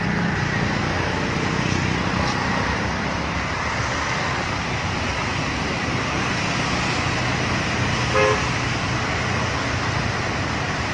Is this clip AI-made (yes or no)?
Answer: no